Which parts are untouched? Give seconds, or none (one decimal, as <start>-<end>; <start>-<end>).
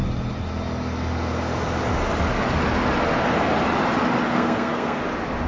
0.0-4.3; 5.0-5.5